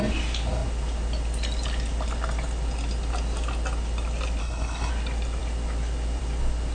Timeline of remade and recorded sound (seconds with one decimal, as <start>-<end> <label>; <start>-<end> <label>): 0.0-4.4 recorded; 4.4-4.9 remade; 4.9-6.7 recorded